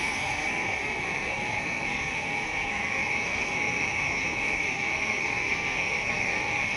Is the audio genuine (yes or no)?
no